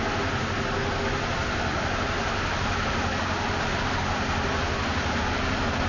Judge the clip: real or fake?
real